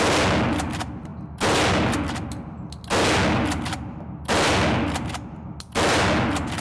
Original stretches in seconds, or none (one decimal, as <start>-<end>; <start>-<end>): 0.0-6.6